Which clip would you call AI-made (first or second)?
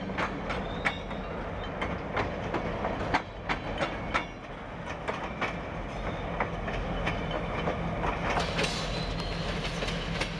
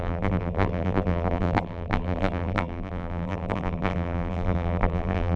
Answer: second